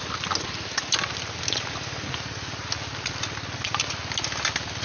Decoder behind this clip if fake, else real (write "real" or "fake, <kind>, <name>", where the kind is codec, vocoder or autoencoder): real